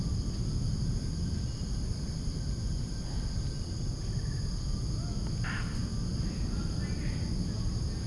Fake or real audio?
real